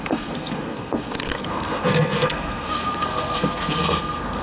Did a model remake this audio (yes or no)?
yes